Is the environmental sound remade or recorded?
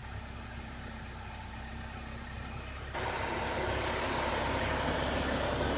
remade